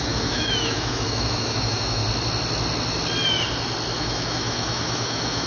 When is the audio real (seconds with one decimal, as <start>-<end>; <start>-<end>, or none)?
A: 2.0-4.0